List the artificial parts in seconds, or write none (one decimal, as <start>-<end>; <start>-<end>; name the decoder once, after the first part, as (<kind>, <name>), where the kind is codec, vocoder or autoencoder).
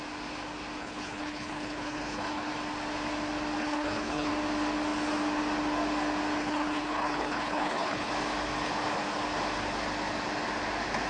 0.8-2.5 (codec, HILCodec); 3.6-4.3; 6.4-8.1